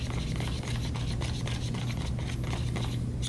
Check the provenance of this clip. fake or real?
real